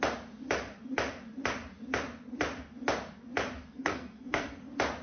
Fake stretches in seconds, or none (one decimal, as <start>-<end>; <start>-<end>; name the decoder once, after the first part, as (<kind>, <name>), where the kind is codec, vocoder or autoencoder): 3.7-4.6 (codec, SNAC)